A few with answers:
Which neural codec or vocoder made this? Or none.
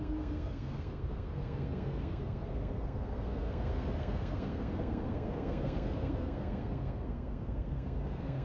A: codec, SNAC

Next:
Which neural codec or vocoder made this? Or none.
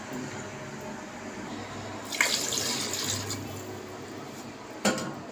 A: none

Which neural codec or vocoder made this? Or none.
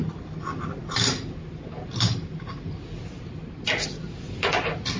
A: none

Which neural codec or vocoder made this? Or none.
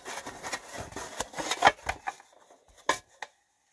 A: none